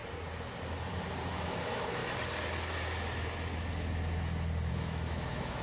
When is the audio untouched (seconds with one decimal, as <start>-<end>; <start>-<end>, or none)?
0.0-1.3; 2.0-4.7